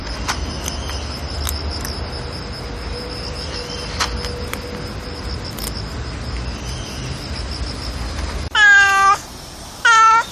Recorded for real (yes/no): yes